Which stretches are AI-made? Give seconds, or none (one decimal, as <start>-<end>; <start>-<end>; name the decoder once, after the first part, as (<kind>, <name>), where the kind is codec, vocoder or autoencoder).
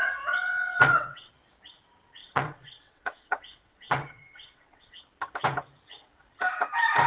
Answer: 0.0-1.3 (vocoder, WaveNeXt); 2.2-5.0